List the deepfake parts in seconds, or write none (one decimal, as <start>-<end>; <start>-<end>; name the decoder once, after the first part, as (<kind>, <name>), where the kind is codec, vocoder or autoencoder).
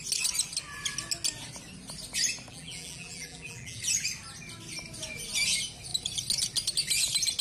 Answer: 2.5-3.8 (vocoder, BigVGAN v2)